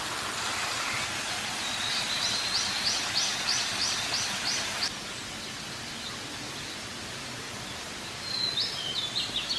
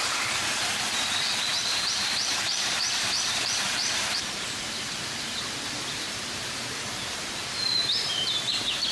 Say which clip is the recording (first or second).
first